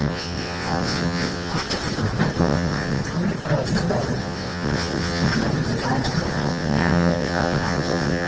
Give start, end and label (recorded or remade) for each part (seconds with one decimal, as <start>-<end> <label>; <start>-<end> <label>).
0.0-1.5 remade; 1.5-2.4 recorded; 2.4-3.0 remade; 3.0-4.2 recorded; 4.2-5.3 remade; 5.3-6.3 recorded; 6.3-8.3 remade